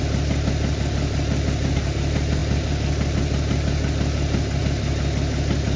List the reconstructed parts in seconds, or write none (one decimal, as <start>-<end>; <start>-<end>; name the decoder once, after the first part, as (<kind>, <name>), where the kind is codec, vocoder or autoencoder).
none